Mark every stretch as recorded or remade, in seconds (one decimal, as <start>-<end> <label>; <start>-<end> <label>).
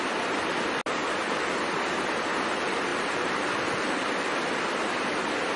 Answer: 0.0-2.9 recorded; 2.9-4.6 remade; 4.6-5.6 recorded